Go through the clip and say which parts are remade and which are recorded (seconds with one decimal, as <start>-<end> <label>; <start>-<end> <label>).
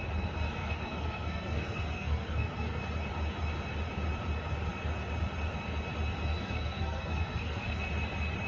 0.0-0.6 recorded; 0.6-2.8 remade; 2.8-6.3 recorded; 6.3-7.9 remade; 7.9-8.5 recorded